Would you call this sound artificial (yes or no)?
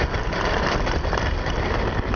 no